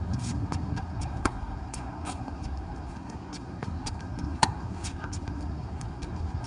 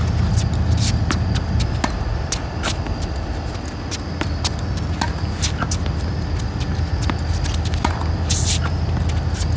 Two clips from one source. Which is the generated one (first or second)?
first